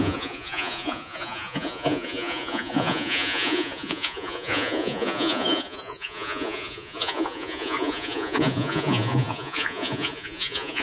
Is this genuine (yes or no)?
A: no